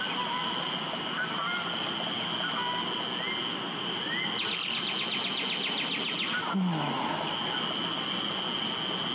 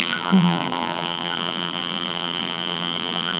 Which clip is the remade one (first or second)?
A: second